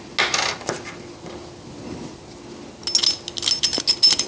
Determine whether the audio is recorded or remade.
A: recorded